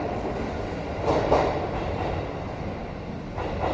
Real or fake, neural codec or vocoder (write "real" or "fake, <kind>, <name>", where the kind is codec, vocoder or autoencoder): real